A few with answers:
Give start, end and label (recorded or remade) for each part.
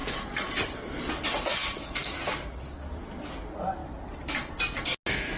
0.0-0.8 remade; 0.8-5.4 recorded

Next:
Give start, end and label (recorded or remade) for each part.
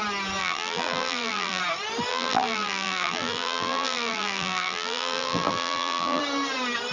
0.0-0.4 recorded; 0.4-1.6 remade; 1.6-2.1 recorded; 2.1-6.2 remade; 6.2-6.9 recorded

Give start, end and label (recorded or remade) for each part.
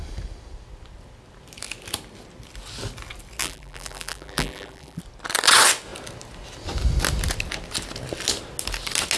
0.0-3.4 recorded; 3.4-5.0 remade; 5.0-9.2 recorded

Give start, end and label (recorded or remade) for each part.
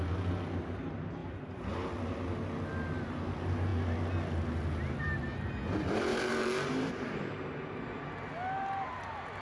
0.0-1.2 recorded; 1.2-1.9 remade; 1.9-6.1 recorded; 6.1-8.0 remade; 8.0-9.4 recorded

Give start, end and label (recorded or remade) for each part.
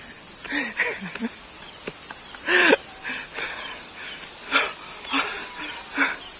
0.0-0.4 recorded; 0.4-4.1 remade; 4.1-6.4 recorded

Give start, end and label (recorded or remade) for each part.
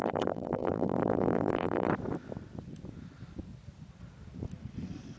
0.0-1.9 remade; 1.9-5.2 recorded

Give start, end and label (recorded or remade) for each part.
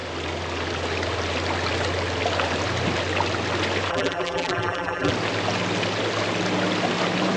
0.0-3.9 recorded; 3.9-5.1 remade; 5.1-7.4 recorded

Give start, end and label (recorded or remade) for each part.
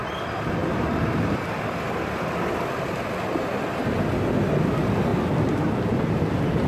0.0-6.7 recorded